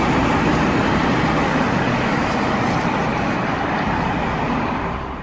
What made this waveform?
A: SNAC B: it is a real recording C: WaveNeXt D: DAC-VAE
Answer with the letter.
B